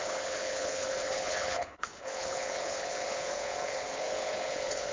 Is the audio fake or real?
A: fake